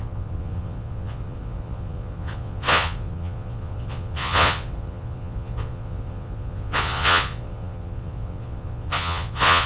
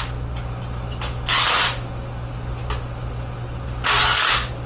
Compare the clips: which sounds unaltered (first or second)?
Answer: second